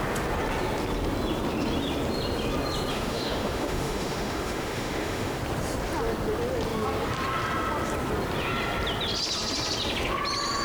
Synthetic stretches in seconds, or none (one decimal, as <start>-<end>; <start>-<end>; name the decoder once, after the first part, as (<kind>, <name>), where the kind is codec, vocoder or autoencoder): 2.9-5.4 (autoencoder, DAC-VAE)